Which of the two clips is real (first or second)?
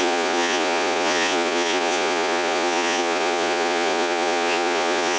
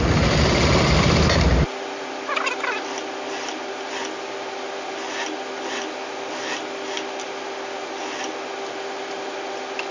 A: second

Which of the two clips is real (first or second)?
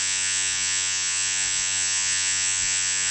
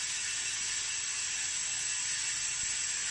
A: second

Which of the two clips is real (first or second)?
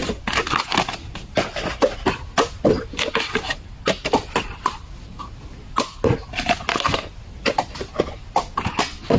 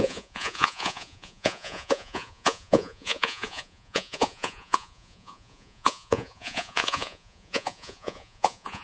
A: first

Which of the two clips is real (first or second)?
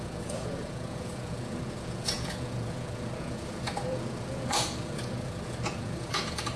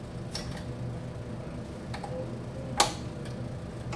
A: second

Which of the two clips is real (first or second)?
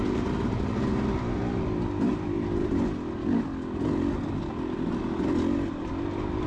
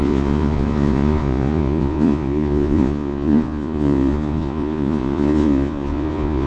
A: first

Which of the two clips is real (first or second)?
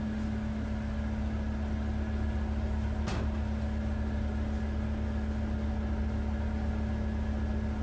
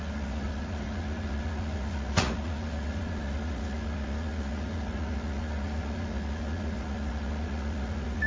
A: first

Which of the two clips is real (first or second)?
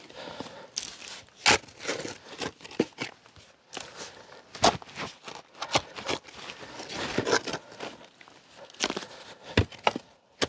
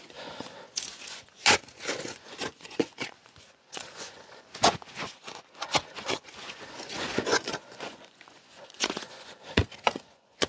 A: first